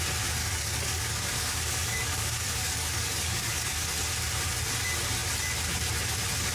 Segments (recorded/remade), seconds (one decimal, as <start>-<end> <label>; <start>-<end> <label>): 0.0-0.4 recorded; 0.4-3.9 remade; 3.9-6.5 recorded